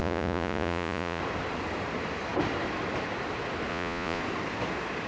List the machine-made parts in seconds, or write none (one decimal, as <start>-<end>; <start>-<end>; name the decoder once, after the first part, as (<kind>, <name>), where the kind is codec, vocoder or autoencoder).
0.0-1.2 (vocoder, Vocos); 3.7-4.2